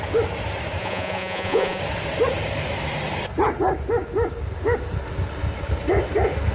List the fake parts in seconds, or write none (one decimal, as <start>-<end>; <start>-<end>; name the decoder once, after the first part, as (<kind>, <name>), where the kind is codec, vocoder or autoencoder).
0.8-1.8 (vocoder, Vocos)